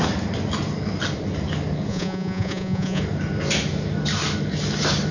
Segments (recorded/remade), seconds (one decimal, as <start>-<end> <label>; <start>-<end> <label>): 0.0-1.9 recorded; 1.9-3.0 remade; 3.0-5.1 recorded